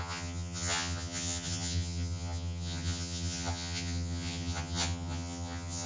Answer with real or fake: fake